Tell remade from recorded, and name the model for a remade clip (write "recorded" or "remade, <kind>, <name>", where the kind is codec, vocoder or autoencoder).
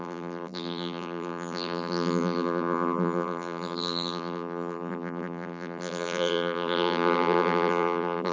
remade, vocoder, BigVGAN v2